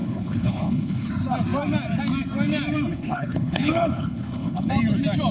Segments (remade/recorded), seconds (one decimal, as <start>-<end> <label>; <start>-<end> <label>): 0.0-1.1 remade; 1.1-2.9 recorded; 2.9-4.7 remade; 4.7-5.3 recorded